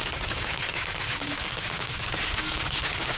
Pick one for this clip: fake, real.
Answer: fake